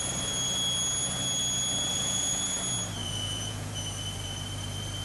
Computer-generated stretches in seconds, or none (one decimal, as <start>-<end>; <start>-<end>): 1.9-2.4; 3.0-3.7